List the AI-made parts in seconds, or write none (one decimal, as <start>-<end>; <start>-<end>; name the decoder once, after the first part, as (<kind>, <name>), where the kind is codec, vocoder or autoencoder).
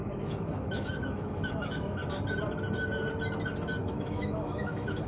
0.0-2.0 (autoencoder, DAC-VAE); 3.8-5.1